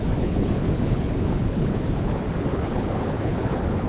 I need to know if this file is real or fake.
fake